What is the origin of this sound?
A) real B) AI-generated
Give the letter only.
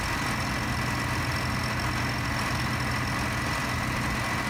A